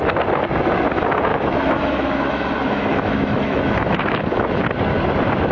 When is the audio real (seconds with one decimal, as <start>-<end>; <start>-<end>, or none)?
0.0-1.3; 4.6-5.5